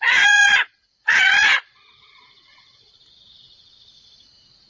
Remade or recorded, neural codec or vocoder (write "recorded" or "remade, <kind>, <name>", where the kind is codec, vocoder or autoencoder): remade, vocoder, Vocos